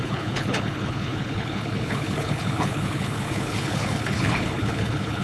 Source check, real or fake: fake